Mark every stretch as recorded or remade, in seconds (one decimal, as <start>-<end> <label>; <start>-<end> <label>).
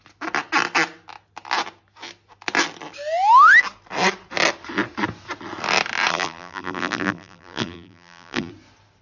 0.0-6.1 recorded; 6.1-8.5 remade; 8.5-9.0 recorded